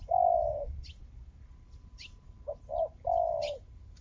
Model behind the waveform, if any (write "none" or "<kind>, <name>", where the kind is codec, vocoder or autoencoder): none